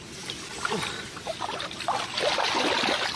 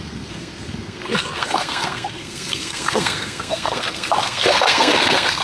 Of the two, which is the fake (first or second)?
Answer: second